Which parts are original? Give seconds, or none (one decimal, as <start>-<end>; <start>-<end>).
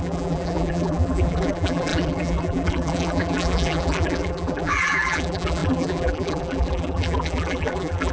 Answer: none